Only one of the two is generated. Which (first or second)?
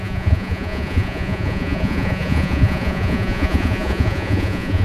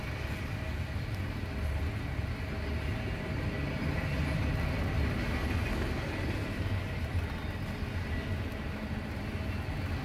first